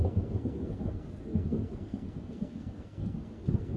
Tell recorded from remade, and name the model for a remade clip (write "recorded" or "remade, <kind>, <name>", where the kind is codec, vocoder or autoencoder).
remade, codec, SNAC